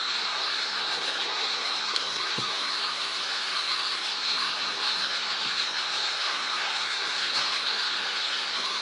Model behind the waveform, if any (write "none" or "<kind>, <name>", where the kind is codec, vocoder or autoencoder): codec, SNAC